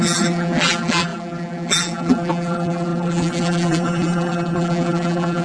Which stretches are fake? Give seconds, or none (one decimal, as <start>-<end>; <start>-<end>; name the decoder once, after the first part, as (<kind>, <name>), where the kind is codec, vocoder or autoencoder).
0.0-5.4 (vocoder, BigVGAN v2)